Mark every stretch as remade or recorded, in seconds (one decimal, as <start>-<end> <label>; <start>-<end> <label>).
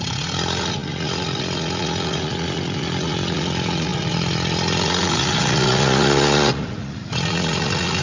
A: 0.0-8.0 remade